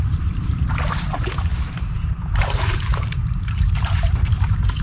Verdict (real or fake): fake